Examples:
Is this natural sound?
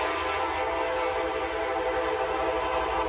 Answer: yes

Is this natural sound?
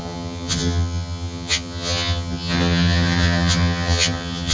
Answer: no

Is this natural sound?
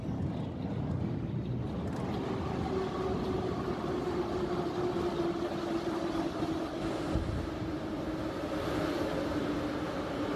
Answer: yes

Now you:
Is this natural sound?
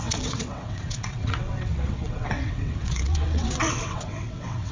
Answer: no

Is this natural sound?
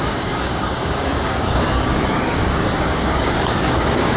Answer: no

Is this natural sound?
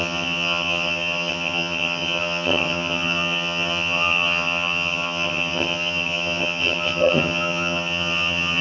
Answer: no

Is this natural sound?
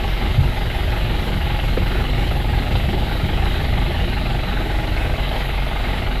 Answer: no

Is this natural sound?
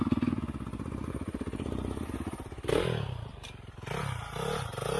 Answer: yes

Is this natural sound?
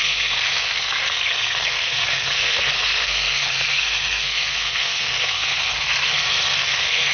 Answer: no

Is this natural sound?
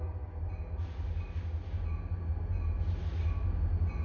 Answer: yes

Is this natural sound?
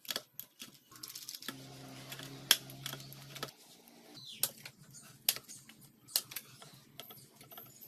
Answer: yes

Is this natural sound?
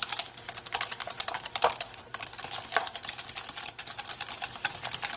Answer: yes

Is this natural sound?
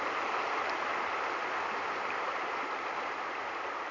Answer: yes